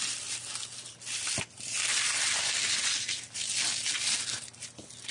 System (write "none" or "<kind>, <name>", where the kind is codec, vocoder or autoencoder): none